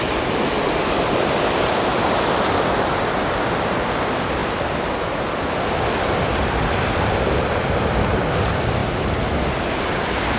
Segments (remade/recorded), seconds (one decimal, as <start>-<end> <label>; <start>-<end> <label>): 0.0-10.4 recorded